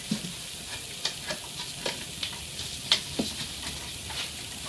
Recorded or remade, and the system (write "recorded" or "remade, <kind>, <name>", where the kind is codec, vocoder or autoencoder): recorded